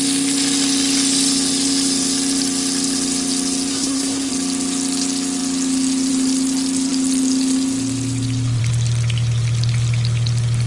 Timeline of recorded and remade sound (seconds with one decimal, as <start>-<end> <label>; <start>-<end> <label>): 0.0-3.7 recorded; 3.7-4.3 remade; 4.3-10.7 recorded

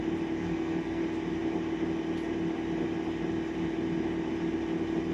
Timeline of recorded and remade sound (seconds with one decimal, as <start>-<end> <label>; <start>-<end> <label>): 0.0-0.4 recorded; 0.4-1.0 remade; 1.0-5.1 recorded

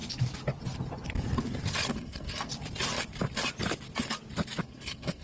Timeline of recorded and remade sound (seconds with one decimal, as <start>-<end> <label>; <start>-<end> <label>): 0.0-1.9 recorded; 1.9-2.5 remade; 2.5-4.6 recorded; 4.6-5.2 remade

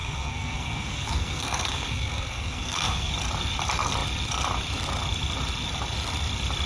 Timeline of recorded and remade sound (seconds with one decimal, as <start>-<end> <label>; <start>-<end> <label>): 0.0-3.1 remade; 3.1-6.7 recorded